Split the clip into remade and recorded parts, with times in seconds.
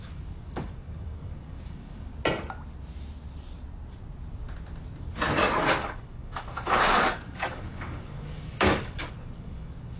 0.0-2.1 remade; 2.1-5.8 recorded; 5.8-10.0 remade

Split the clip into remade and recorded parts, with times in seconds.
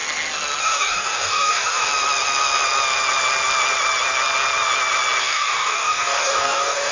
0.0-0.6 recorded; 0.6-1.9 remade; 1.9-5.2 recorded; 5.2-6.9 remade